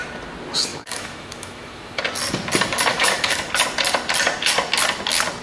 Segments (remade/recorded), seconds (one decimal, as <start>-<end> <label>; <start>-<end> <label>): 0.0-0.7 recorded; 0.7-2.0 remade; 2.0-2.9 recorded; 2.9-3.5 remade; 3.5-5.4 recorded